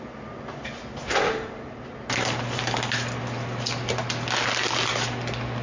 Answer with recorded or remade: recorded